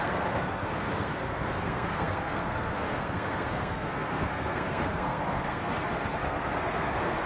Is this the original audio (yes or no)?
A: no